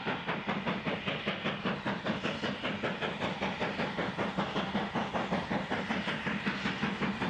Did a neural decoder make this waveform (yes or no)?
no